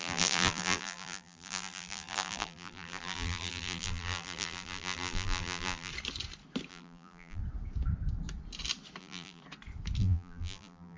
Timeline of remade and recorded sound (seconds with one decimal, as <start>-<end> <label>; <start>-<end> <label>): 0.0-5.9 remade; 5.9-6.7 recorded; 6.7-7.4 remade; 7.4-9.0 recorded; 9.0-9.4 remade; 9.4-10.0 recorded; 10.0-11.0 remade